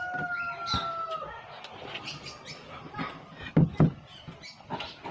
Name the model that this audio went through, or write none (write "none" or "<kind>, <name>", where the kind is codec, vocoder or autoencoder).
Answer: none